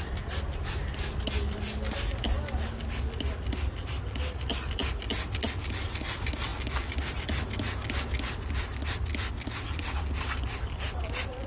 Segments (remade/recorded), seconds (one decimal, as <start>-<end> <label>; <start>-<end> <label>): 0.0-11.5 recorded